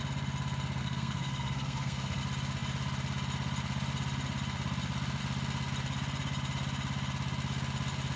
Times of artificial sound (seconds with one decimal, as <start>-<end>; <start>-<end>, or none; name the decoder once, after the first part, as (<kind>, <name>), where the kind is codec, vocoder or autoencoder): 0.8-2.2 (codec, SNAC)